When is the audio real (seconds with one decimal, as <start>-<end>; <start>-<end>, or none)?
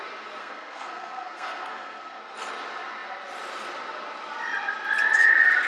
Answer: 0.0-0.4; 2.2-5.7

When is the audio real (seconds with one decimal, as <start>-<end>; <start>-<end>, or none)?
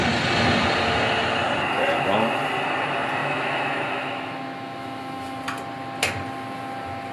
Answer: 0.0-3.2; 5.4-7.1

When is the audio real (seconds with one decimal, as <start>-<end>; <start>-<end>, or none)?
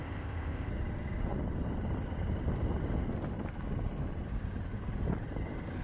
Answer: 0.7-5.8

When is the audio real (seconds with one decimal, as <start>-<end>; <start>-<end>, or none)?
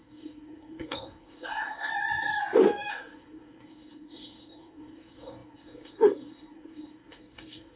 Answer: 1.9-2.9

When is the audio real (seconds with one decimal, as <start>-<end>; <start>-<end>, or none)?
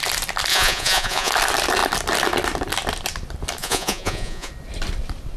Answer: 0.0-0.5; 1.3-3.6; 4.5-5.4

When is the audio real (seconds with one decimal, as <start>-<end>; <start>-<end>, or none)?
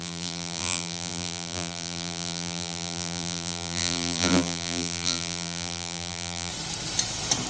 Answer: 6.5-7.5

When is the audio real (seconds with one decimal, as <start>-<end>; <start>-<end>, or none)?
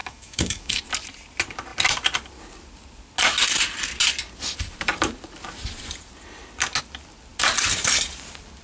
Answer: 0.9-8.6